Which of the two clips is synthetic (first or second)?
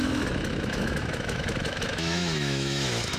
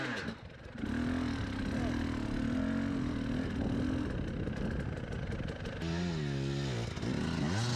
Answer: first